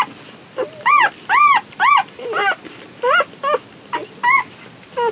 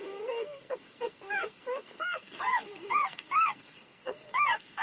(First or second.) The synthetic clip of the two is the second